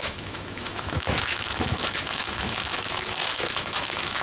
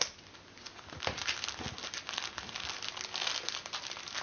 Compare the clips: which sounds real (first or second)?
second